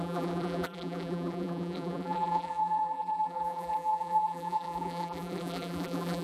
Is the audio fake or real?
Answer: fake